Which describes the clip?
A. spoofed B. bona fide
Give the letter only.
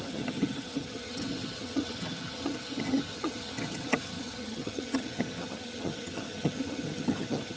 A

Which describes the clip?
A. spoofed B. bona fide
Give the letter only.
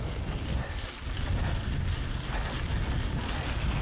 B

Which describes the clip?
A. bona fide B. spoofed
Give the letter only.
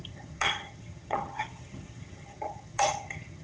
B